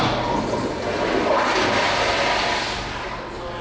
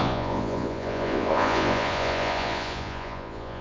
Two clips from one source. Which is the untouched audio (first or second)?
first